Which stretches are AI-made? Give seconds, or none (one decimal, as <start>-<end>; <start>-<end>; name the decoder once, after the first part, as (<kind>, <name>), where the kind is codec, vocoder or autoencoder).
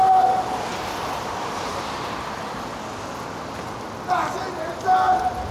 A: 0.7-2.4 (vocoder, BigVGAN v2)